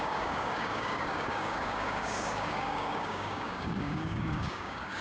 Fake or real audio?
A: fake